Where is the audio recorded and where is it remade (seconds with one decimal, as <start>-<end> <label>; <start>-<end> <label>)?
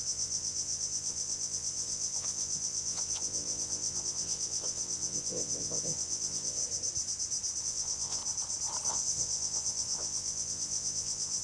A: 0.0-6.6 remade; 6.6-7.6 recorded; 7.6-8.2 remade; 8.2-8.9 recorded; 8.9-11.4 remade